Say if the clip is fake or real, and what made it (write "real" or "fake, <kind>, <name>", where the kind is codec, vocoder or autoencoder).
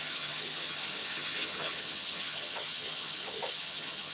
fake, vocoder, HiFi-GAN